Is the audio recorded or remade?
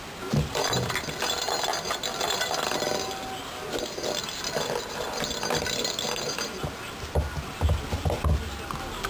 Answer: recorded